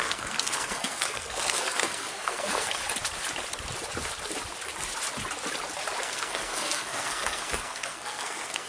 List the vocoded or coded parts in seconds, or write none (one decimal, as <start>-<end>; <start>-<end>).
0.0-2.8; 6.0-8.7